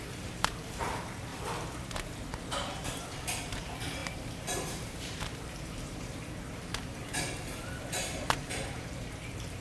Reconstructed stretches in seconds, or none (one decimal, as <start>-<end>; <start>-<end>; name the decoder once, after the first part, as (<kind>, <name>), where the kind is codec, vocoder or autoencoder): 0.0-9.6 (vocoder, BigVGAN v2)